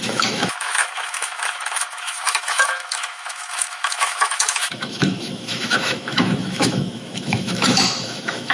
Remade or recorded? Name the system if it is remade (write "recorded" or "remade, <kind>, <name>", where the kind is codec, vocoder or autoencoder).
remade, autoencoder, DAC-VAE